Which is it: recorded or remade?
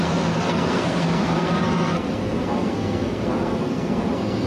remade